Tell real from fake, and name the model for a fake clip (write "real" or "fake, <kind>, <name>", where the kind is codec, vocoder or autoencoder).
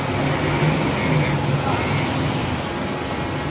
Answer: real